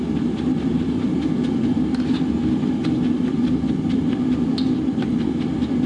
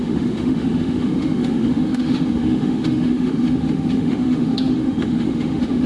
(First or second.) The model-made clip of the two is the second